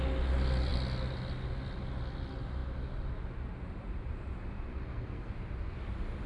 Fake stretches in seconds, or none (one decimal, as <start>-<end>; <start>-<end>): 4.7-5.3